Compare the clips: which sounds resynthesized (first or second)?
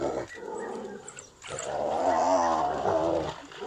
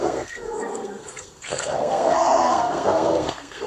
second